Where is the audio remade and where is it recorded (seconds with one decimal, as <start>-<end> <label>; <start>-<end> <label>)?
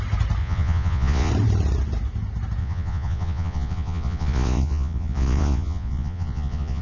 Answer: 0.0-0.4 recorded; 0.4-1.3 remade; 1.3-2.6 recorded; 2.6-6.8 remade